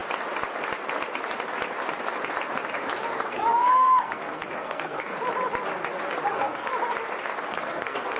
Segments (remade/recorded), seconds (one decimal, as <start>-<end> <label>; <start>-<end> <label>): 0.0-3.3 recorded; 3.3-5.2 remade; 5.2-6.3 recorded; 6.3-6.7 remade; 6.7-7.4 recorded; 7.4-8.2 remade